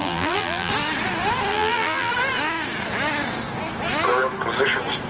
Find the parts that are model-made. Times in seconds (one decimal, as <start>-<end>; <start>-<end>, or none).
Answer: 0.0-0.7; 1.5-2.1